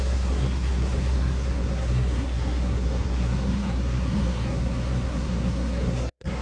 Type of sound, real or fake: fake